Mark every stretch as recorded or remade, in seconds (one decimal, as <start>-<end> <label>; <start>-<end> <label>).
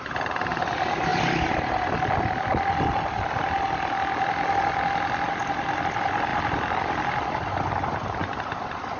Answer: 0.0-1.1 recorded; 1.1-2.1 remade; 2.1-9.0 recorded